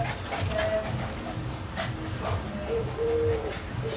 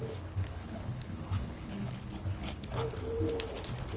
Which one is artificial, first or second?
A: second